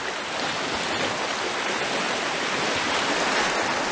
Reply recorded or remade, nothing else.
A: recorded